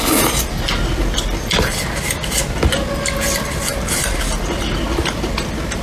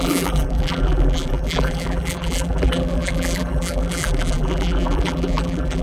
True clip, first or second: first